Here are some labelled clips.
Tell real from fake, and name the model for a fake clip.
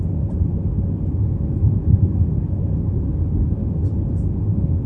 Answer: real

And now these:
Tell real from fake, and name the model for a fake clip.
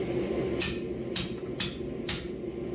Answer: real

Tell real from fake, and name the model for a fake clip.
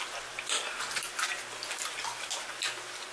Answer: real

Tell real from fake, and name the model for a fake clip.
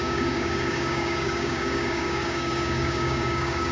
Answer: fake, codec, DAC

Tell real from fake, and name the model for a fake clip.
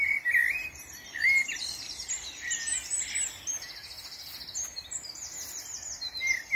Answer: real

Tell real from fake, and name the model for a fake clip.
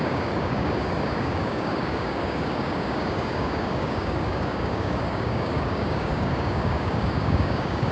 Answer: fake, codec, DAC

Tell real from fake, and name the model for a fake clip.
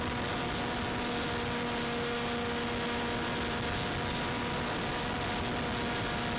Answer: real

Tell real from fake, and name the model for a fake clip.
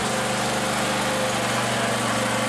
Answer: real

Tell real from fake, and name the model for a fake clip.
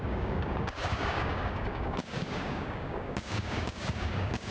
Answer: fake, codec, DAC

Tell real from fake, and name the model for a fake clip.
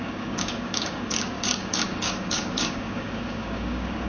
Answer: fake, codec, DAC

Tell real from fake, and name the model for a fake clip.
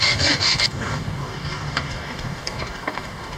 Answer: fake, codec, DAC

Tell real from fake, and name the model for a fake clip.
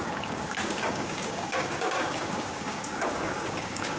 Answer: fake, codec, DAC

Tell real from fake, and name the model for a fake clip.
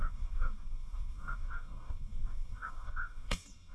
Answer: fake, codec, DAC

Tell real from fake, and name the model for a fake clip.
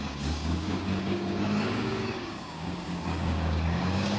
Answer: fake, codec, DAC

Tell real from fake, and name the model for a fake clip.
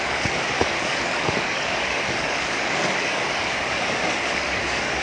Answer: fake, codec, DAC